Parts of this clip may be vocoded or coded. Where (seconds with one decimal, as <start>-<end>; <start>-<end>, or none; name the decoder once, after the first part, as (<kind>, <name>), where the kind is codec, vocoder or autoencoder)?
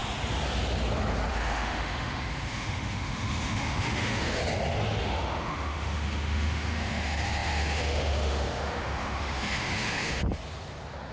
1.3-4.4 (autoencoder, DAC-VAE); 5.0-10.2